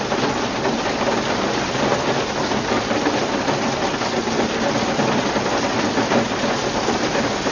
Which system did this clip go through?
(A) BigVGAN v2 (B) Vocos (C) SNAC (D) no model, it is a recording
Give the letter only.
D